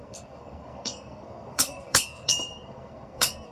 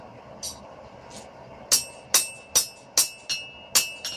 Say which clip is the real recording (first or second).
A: second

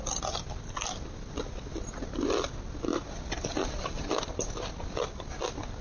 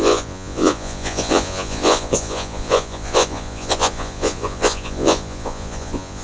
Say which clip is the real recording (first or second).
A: first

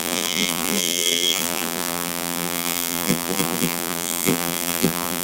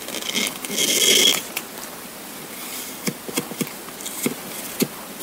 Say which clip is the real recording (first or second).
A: second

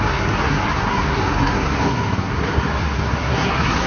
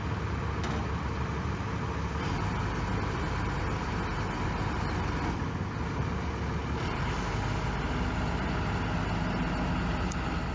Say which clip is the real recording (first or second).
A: second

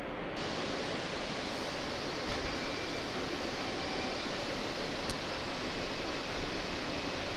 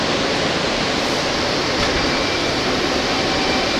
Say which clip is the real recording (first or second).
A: second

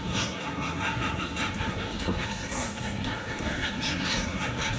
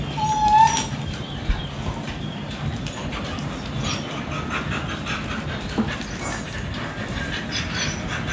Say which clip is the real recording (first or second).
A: second